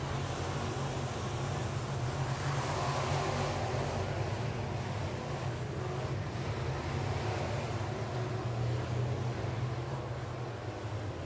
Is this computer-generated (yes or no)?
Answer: no